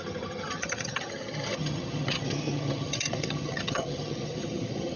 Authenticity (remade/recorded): remade